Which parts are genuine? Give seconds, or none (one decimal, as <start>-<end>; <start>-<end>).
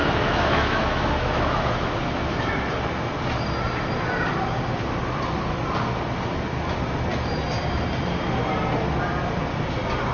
2.5-10.1